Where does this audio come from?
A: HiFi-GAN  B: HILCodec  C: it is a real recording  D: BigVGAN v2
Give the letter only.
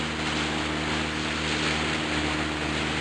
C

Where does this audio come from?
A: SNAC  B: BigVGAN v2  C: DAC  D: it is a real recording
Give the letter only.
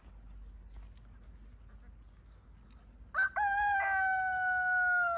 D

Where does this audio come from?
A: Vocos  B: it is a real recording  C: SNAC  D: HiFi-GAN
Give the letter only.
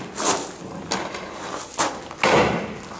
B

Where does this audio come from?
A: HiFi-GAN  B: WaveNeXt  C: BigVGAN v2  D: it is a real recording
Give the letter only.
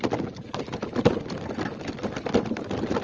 D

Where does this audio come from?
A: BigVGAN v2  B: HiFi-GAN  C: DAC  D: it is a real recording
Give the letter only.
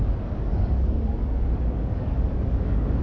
C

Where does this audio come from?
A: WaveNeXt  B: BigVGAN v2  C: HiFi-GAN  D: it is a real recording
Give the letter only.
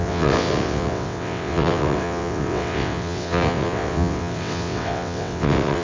A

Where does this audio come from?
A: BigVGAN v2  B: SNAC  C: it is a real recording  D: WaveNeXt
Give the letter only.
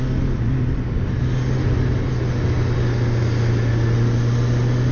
C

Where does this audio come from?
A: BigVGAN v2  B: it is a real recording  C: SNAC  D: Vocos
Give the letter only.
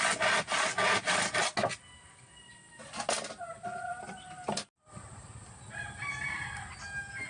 B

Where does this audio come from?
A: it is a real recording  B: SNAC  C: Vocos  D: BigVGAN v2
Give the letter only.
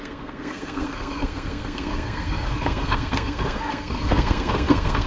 B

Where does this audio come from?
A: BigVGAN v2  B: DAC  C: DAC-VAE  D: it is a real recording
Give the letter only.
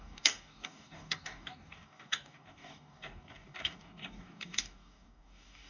B